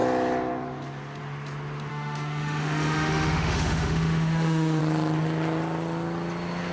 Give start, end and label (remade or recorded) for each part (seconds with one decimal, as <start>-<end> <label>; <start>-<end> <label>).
0.0-1.9 recorded; 1.9-4.8 remade; 4.8-6.7 recorded